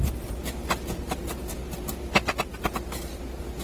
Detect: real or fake real